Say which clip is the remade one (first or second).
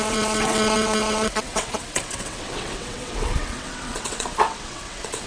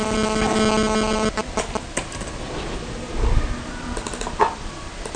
first